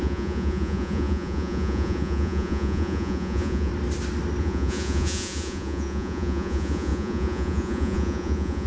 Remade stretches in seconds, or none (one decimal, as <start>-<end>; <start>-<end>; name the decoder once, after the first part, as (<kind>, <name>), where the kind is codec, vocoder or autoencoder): 0.0-3.7 (vocoder, Vocos); 4.4-8.7

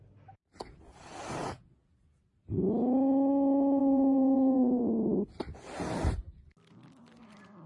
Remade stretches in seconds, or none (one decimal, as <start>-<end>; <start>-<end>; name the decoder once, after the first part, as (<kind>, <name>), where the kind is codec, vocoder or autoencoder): 1.4-2.2 (vocoder, Vocos); 3.8-4.8

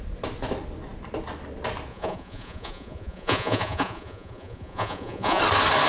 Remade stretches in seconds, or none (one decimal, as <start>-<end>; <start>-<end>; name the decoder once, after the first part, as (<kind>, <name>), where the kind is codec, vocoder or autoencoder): 1.9-5.4 (vocoder, Vocos)

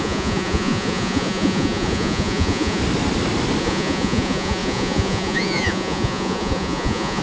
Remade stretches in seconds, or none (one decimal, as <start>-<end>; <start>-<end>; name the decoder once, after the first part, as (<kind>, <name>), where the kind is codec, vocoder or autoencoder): 0.0-2.8 (vocoder, Vocos); 3.6-7.2

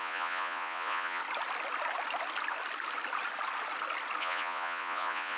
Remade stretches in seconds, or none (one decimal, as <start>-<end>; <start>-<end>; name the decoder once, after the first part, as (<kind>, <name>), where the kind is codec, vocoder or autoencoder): 0.0-1.2 (vocoder, Vocos); 4.2-5.4

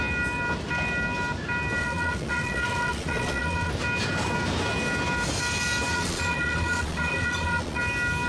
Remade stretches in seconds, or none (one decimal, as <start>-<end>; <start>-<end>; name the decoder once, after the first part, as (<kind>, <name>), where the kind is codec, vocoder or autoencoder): 1.8-3.7 (vocoder, Vocos); 5.9-7.8

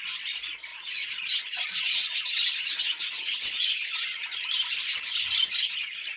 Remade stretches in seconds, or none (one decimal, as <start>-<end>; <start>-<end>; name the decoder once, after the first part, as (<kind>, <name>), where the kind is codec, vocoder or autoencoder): 0.7-4.2 (vocoder, Vocos)